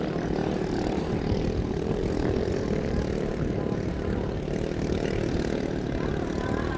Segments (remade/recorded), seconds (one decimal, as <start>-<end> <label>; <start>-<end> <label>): 0.0-6.8 recorded